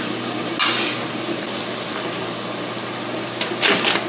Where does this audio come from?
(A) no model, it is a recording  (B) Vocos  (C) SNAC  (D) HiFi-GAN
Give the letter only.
A